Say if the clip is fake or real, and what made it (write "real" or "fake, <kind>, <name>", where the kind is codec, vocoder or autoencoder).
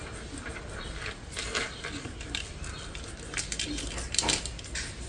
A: real